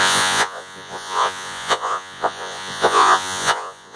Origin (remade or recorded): remade